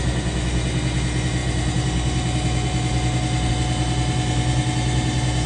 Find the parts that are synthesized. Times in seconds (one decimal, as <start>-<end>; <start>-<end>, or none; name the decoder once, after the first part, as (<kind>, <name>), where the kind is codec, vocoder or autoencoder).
none